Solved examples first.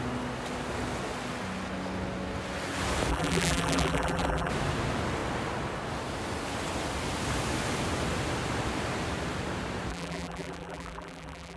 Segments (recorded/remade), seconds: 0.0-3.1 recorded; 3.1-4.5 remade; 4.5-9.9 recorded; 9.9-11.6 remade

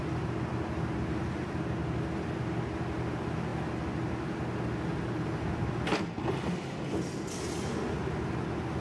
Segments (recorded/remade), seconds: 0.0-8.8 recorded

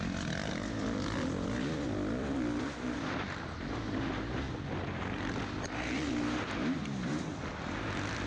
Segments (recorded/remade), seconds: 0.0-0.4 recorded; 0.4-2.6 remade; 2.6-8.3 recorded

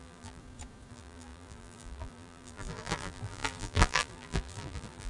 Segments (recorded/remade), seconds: 0.0-0.4 remade; 0.4-0.9 recorded; 0.9-5.1 remade